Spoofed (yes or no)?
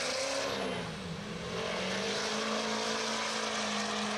no